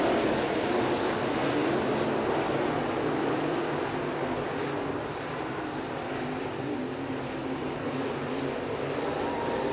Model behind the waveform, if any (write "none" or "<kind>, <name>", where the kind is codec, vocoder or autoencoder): none